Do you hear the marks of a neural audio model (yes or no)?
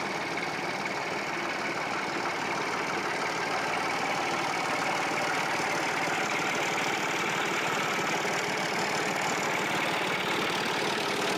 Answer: no